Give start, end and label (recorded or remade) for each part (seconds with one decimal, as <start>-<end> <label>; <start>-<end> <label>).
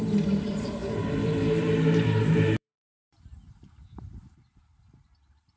0.0-5.6 remade